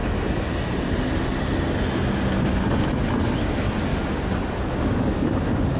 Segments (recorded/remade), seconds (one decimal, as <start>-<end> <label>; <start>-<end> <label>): 0.0-5.8 recorded